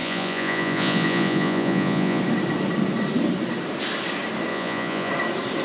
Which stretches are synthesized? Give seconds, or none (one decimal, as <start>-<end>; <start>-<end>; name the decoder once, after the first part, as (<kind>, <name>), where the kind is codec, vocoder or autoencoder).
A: 0.0-2.2 (vocoder, Vocos); 4.5-5.1